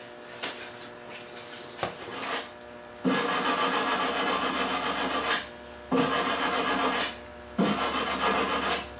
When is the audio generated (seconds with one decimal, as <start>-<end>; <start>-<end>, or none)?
none